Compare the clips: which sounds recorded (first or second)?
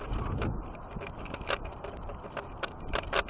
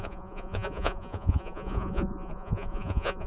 first